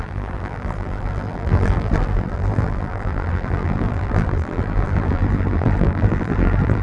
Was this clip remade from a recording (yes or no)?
yes